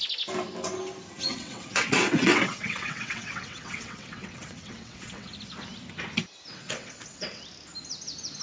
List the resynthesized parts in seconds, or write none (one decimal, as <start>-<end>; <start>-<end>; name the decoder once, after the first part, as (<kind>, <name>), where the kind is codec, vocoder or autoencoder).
1.3-5.3 (vocoder, WaveNeXt); 6.5-7.4